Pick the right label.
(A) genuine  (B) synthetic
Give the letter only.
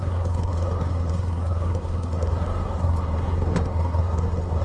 B